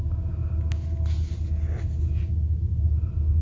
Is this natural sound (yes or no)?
yes